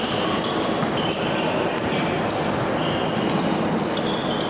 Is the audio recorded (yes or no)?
yes